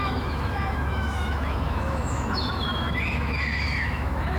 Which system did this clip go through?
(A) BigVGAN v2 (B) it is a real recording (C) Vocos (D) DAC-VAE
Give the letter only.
D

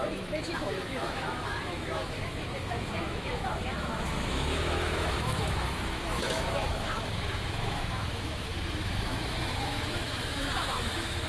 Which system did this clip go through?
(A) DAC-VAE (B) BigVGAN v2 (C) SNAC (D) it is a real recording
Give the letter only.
A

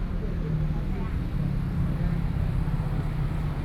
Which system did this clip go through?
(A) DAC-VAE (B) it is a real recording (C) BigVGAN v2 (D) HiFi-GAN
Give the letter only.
B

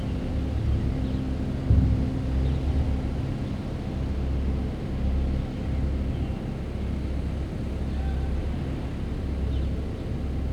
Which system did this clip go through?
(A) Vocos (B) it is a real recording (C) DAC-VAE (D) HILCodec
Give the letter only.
B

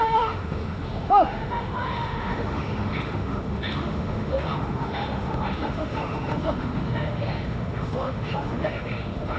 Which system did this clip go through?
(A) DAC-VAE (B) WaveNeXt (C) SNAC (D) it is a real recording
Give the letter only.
A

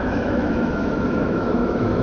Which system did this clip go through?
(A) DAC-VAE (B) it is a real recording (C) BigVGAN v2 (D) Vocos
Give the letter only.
A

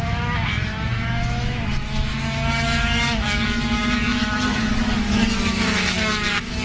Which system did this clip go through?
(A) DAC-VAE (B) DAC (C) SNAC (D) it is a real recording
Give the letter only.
A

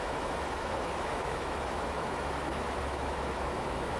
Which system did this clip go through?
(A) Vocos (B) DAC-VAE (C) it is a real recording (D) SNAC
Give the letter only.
B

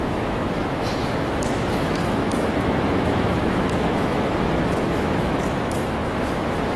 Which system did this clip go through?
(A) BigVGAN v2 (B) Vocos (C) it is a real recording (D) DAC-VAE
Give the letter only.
D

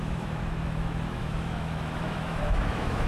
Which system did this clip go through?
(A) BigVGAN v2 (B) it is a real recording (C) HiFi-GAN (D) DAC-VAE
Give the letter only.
D